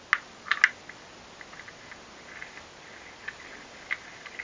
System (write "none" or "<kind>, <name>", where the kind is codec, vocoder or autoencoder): none